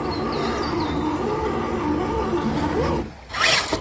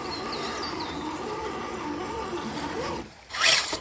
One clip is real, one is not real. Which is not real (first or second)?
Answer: second